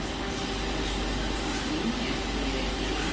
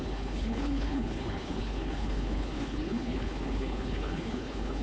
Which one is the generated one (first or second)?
second